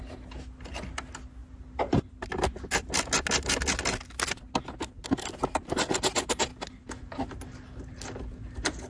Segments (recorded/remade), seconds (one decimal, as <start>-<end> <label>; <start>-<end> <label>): 0.0-8.9 recorded